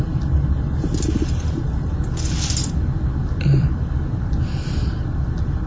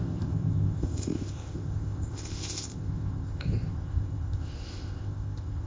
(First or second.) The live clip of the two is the first